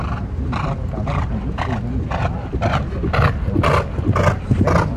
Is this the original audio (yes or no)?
yes